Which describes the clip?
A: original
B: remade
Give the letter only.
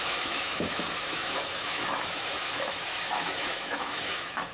B